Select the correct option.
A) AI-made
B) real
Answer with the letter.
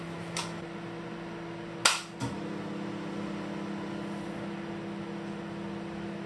B